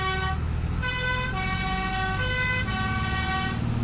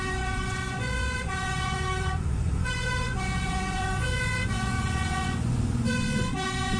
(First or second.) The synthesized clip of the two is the second